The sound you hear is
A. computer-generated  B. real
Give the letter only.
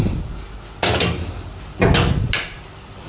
B